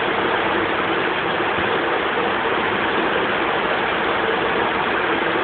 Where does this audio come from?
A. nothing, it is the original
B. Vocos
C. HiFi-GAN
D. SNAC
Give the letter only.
A